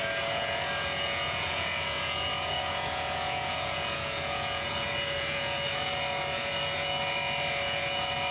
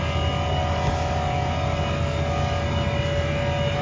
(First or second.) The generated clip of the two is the first